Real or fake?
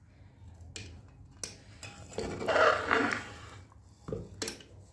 real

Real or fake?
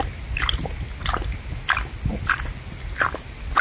real